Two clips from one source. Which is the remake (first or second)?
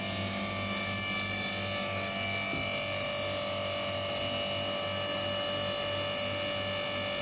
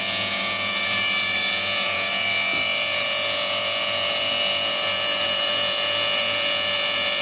second